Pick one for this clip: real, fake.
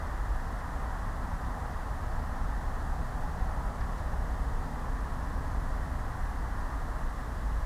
real